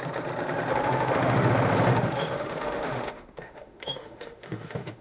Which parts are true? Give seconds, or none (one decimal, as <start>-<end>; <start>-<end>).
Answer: 0.0-0.7; 1.5-1.9